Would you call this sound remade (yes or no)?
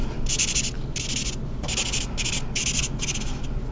no